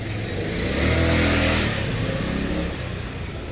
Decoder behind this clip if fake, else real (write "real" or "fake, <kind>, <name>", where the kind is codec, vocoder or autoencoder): real